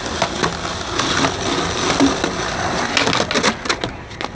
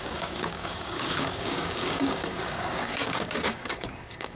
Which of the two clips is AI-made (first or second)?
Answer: second